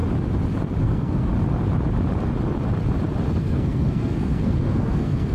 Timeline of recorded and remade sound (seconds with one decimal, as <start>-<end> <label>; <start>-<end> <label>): 0.0-0.8 recorded; 0.8-1.3 remade; 1.3-3.4 recorded; 3.4-5.3 remade